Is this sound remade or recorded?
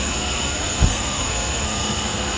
remade